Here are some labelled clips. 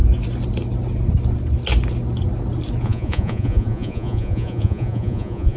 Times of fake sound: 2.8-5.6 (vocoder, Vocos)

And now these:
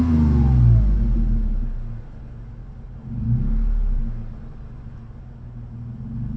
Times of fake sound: none